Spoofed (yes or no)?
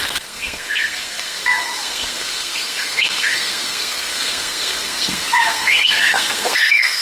yes